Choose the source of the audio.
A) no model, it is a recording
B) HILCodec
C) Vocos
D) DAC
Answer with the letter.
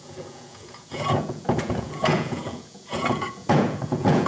C